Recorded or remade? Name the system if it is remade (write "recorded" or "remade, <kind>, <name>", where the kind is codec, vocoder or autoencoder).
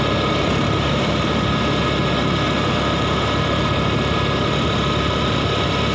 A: recorded